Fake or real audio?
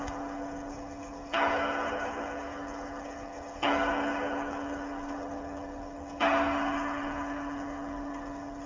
fake